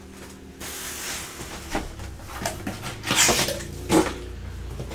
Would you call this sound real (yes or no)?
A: yes